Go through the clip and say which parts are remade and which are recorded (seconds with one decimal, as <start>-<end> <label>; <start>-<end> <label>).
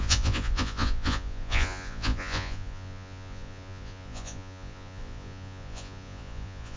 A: 0.0-6.8 remade